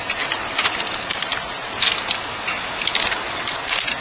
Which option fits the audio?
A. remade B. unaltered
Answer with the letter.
B